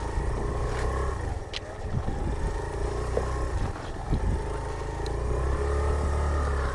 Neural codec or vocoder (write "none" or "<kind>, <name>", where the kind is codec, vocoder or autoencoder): none